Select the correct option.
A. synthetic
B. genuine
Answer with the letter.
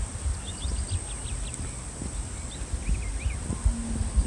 B